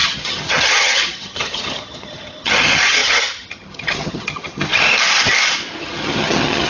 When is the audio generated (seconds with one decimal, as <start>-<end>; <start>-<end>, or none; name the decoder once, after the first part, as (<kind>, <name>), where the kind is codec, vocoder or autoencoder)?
0.0-4.7 (vocoder, HiFi-GAN); 5.8-6.7